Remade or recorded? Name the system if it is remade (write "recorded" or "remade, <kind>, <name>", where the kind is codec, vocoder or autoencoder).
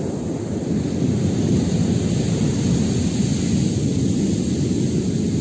recorded